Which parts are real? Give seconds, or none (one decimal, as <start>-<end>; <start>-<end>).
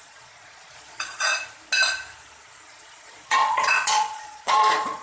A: 1.3-2.7